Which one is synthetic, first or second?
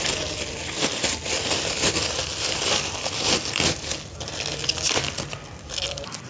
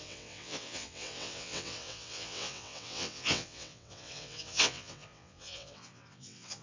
second